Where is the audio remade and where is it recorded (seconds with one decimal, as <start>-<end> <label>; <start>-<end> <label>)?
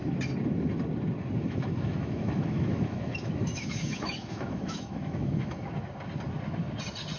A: 0.0-1.4 recorded; 1.4-5.7 remade; 5.7-7.2 recorded